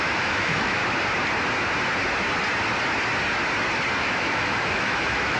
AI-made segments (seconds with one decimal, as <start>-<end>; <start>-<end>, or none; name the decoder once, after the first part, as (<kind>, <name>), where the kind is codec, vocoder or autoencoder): 0.0-0.8 (autoencoder, DAC-VAE); 4.0-5.4